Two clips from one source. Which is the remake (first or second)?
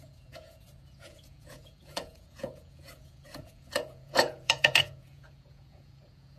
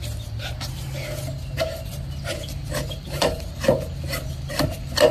first